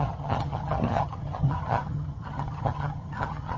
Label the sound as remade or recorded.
remade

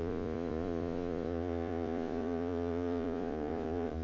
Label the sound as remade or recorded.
remade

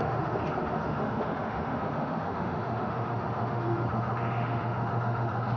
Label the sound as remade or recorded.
remade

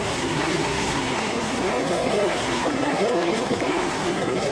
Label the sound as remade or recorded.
remade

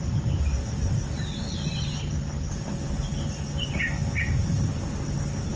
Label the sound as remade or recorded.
recorded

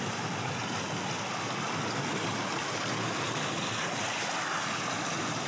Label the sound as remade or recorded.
recorded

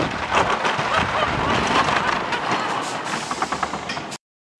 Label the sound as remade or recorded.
remade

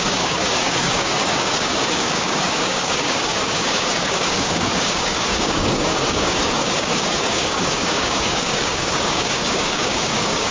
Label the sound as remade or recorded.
remade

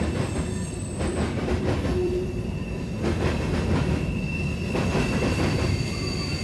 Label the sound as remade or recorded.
remade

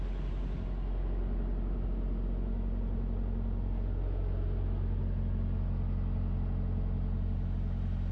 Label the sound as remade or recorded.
recorded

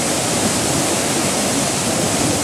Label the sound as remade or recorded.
remade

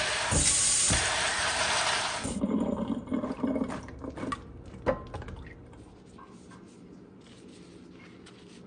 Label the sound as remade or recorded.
recorded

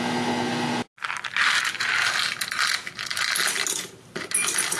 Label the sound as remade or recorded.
recorded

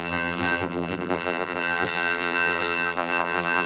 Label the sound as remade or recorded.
remade